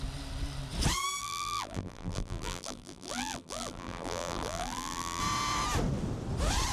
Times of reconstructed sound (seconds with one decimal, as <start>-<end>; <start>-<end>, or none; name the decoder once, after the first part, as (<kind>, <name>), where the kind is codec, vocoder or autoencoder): 1.2-5.2 (vocoder, BigVGAN v2)